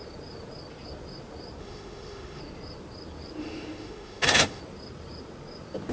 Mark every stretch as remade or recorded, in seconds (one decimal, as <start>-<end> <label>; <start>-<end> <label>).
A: 0.0-1.6 recorded; 1.6-2.4 remade; 2.4-3.4 recorded; 3.4-4.6 remade; 4.6-5.9 recorded